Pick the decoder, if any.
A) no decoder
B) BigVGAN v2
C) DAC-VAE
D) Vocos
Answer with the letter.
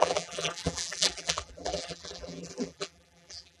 B